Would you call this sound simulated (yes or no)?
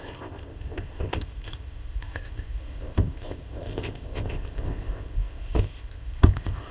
yes